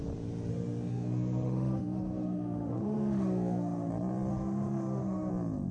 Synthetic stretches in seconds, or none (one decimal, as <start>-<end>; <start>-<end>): 0.5-3.9; 4.3-5.3